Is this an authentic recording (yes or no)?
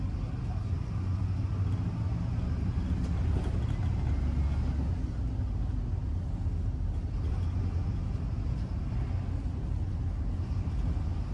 yes